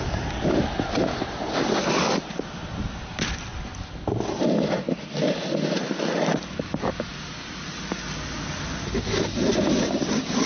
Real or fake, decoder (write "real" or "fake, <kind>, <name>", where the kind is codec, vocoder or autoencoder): real